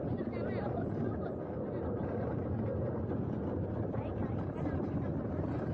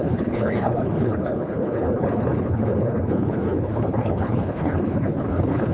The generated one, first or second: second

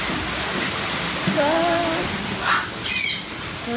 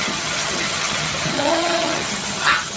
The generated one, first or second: second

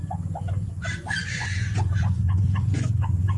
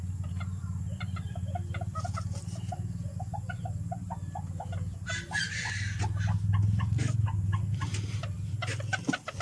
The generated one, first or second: first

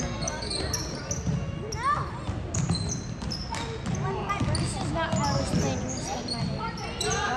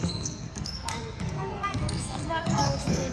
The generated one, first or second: second